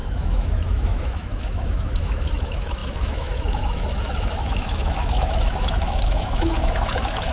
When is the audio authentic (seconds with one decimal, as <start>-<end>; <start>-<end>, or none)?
none